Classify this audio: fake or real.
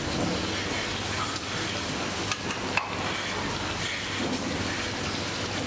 real